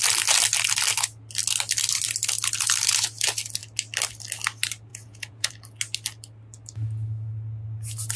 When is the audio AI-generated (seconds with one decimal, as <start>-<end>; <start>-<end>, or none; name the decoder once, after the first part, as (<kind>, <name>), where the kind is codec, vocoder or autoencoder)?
4.9-5.5 (vocoder, Vocos)